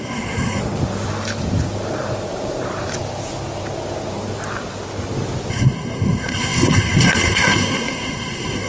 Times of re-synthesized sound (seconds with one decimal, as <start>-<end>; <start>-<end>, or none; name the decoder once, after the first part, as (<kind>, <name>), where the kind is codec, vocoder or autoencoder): 0.0-0.6 (codec, SNAC); 5.5-8.7